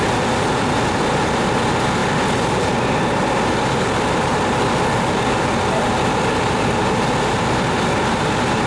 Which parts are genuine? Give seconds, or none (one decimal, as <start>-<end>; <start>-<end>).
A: 0.0-8.7